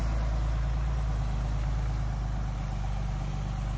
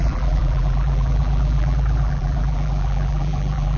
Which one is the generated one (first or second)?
second